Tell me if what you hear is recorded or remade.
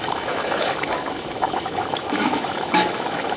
remade